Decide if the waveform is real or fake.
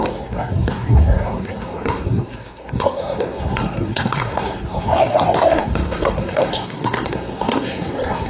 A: fake